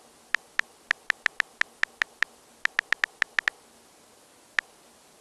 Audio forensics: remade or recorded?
recorded